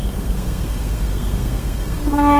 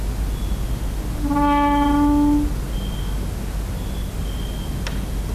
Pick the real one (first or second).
second